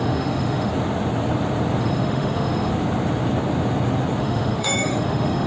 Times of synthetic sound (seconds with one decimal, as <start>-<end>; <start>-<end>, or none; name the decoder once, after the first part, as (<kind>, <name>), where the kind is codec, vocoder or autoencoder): 0.0-0.7 (autoencoder, DAC-VAE); 1.8-2.7; 4.2-5.5